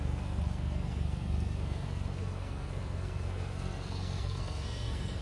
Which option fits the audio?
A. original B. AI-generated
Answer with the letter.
B